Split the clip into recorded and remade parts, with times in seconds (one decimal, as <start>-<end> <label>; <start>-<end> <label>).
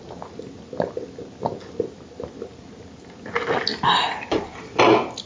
0.0-5.3 recorded